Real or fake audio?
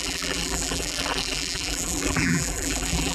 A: fake